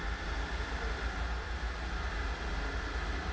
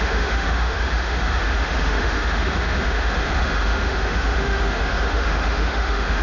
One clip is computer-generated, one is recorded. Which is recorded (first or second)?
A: first